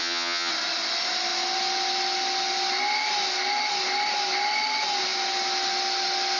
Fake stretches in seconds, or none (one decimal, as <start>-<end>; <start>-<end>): 0.0-0.5